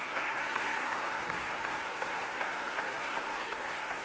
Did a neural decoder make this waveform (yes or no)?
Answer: yes